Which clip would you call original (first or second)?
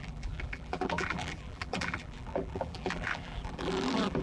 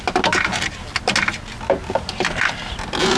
second